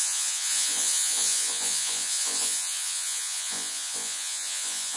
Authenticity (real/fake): fake